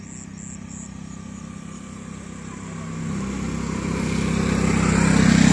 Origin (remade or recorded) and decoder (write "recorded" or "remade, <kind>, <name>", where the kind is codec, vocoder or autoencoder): recorded